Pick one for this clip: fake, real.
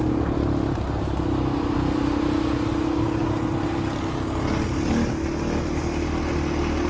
real